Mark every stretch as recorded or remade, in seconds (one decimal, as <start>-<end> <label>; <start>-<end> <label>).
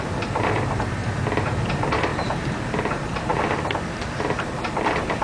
0.0-1.0 remade; 1.0-1.6 recorded; 1.6-5.2 remade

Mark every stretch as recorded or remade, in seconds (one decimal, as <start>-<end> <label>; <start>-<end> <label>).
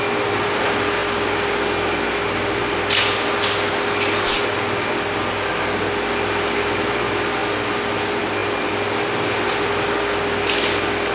0.0-11.1 recorded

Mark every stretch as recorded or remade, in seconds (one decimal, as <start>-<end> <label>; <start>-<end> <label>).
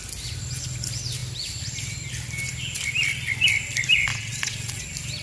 0.0-4.1 recorded; 4.1-4.8 remade; 4.8-5.2 recorded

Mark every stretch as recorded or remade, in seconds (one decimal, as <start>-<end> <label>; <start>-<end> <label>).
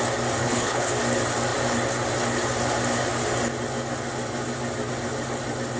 0.0-0.4 recorded; 0.4-0.9 remade; 0.9-5.8 recorded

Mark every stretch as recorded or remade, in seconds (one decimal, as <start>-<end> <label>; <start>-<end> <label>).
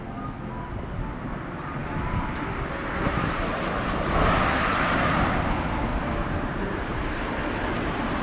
0.0-1.8 recorded; 1.8-2.4 remade; 2.4-5.9 recorded; 5.9-7.2 remade; 7.2-8.2 recorded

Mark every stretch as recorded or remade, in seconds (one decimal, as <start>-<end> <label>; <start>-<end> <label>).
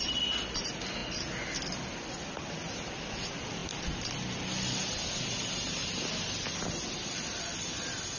0.0-8.2 recorded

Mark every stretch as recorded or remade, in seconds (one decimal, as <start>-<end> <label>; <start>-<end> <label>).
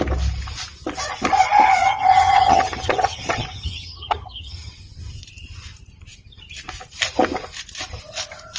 0.0-1.8 recorded; 1.8-4.7 remade; 4.7-8.6 recorded